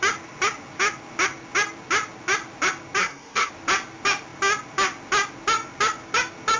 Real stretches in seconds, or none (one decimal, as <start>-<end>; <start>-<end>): 0.0-3.0; 3.5-6.6